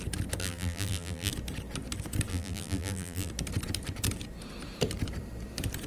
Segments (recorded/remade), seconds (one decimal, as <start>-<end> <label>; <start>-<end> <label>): 0.0-0.4 recorded; 0.4-1.3 remade; 1.3-2.3 recorded; 2.3-3.3 remade; 3.3-5.9 recorded